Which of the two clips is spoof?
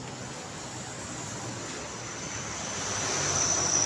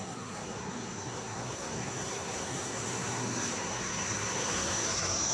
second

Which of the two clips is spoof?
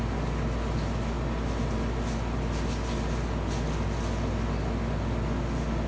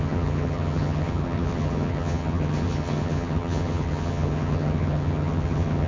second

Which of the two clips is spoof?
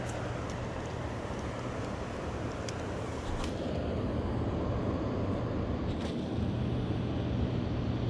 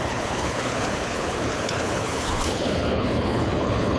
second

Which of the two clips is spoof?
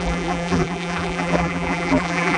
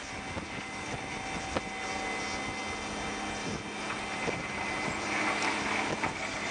first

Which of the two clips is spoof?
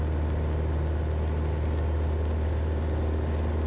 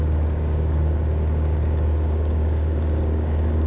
second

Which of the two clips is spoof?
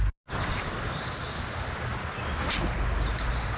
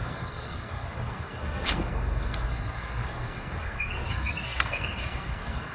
second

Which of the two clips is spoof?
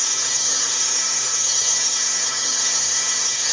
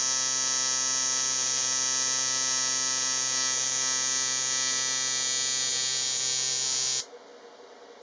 first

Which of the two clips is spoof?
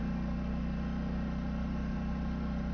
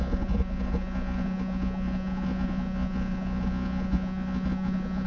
second